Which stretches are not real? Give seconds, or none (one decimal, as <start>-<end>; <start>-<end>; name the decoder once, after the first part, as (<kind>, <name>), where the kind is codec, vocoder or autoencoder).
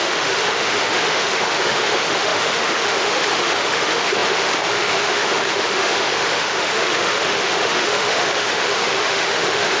0.0-9.8 (autoencoder, DAC-VAE)